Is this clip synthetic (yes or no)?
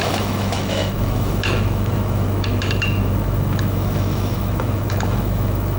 yes